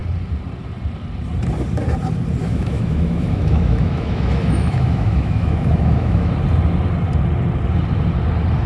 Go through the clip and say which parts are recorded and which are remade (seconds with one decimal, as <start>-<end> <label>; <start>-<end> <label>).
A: 0.0-2.4 recorded; 2.4-6.3 remade; 6.3-8.7 recorded